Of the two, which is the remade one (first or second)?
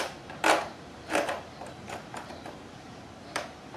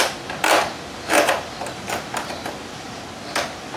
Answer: first